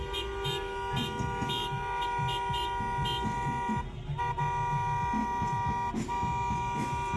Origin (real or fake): real